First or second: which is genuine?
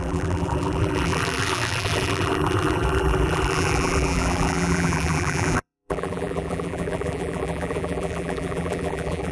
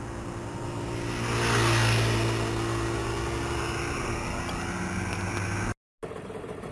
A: second